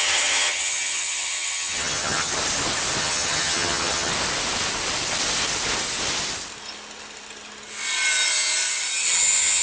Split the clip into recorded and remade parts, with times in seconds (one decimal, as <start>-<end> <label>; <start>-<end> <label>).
0.0-2.3 remade; 2.3-3.0 recorded; 3.0-4.1 remade; 4.1-9.2 recorded; 9.2-9.6 remade